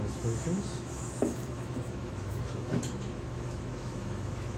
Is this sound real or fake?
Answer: fake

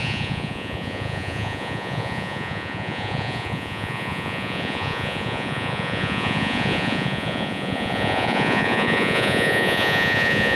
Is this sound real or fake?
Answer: fake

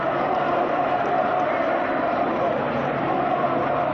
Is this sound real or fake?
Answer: fake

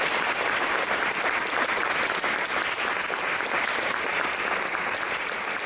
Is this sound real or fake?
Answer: real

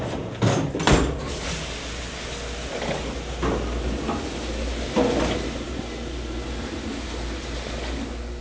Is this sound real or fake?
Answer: real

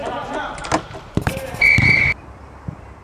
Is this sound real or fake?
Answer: fake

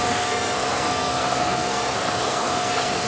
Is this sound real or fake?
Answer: fake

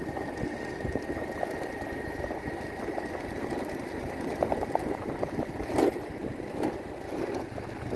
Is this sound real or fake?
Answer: real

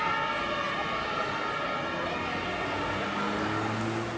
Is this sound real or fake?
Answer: real